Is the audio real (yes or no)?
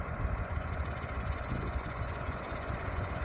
no